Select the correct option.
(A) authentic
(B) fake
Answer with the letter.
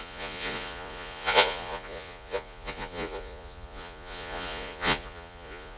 B